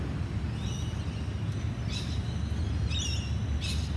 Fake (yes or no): no